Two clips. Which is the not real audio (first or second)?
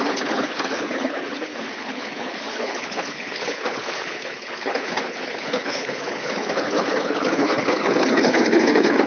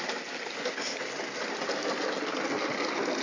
first